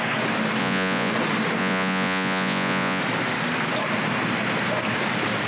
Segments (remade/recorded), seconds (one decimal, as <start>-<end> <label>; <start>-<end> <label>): 0.0-0.6 recorded; 0.6-1.1 remade; 1.1-1.6 recorded; 1.6-3.0 remade; 3.0-5.5 recorded